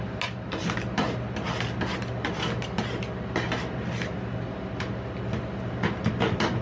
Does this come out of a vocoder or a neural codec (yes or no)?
no